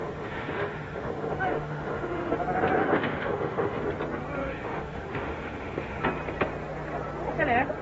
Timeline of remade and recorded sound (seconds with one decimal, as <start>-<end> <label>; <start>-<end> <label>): 0.0-2.3 remade; 2.3-2.8 recorded; 2.8-3.8 remade; 3.8-4.4 recorded; 4.4-6.0 remade; 6.0-7.8 recorded